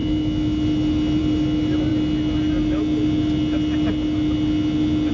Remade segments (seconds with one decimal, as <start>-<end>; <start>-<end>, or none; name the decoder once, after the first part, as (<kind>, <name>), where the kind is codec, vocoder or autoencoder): none